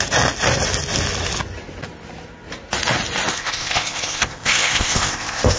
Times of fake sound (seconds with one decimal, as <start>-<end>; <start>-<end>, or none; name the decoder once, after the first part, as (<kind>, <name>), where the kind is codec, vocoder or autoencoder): 3.3-5.6 (codec, ZipCodec)